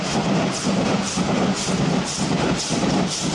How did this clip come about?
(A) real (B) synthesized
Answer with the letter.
B